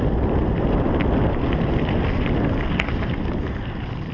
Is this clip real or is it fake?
real